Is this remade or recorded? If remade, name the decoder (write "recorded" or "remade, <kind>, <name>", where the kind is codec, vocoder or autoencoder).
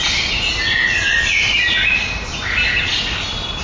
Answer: recorded